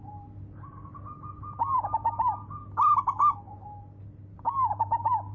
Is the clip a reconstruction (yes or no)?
no